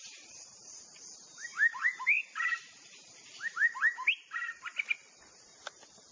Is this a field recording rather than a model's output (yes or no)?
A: yes